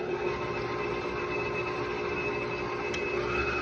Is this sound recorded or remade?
recorded